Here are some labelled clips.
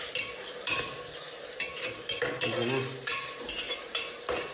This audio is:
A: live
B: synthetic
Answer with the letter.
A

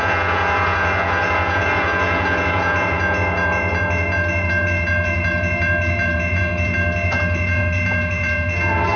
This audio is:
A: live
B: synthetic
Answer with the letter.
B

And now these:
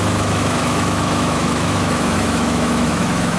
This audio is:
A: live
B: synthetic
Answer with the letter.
B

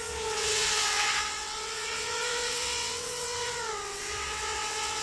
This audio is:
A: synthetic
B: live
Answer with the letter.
A